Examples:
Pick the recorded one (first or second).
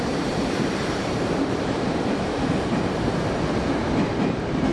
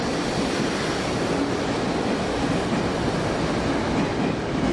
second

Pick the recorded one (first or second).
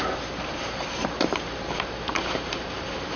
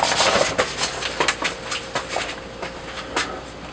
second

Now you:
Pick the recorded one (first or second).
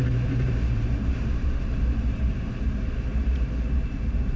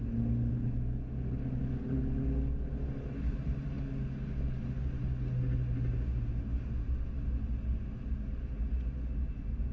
second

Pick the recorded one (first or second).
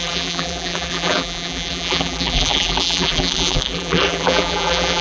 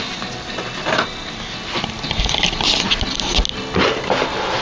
second